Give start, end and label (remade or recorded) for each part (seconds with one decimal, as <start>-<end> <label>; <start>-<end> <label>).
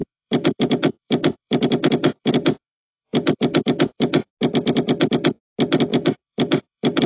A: 0.0-4.3 remade; 4.3-5.9 recorded; 5.9-7.1 remade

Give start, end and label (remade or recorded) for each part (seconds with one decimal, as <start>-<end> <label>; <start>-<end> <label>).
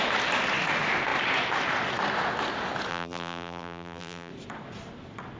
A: 0.0-2.9 recorded; 2.9-4.3 remade; 4.3-5.4 recorded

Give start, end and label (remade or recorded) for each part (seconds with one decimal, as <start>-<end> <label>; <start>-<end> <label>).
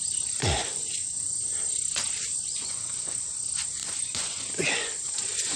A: 0.0-0.6 recorded; 0.6-1.6 remade; 1.6-2.6 recorded; 2.6-3.2 remade; 3.2-3.8 recorded; 3.8-5.6 remade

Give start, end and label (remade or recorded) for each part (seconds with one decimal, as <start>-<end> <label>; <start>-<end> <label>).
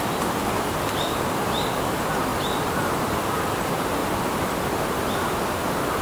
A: 0.0-6.0 recorded